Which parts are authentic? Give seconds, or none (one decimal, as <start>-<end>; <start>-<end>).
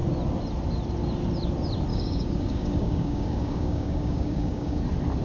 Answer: 0.0-1.9; 4.8-5.2